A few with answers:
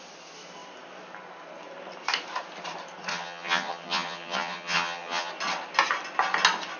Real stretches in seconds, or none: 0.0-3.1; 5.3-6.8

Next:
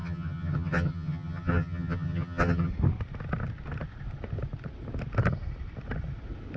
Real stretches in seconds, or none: 2.7-6.6

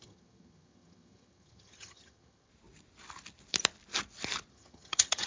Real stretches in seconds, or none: 2.5-4.5

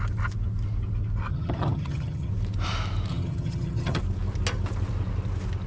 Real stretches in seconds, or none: 0.0-1.3; 2.3-3.1; 4.0-5.7

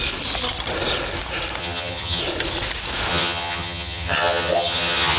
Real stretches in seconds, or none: 0.0-1.6; 2.2-3.1

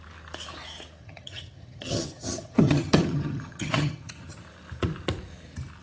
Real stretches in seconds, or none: 0.0-1.0; 4.4-5.8

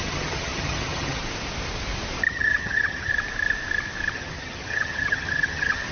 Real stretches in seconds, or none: 1.2-2.3; 3.1-4.1